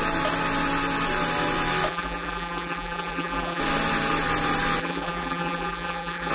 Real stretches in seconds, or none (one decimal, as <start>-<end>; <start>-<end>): 0.0-1.9; 3.6-4.8